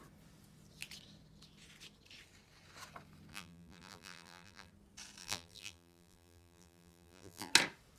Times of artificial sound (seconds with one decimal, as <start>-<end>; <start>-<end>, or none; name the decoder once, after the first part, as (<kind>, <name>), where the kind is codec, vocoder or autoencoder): 3.3-4.7 (vocoder, BigVGAN v2); 5.2-7.5